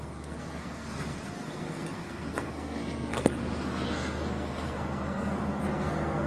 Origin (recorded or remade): remade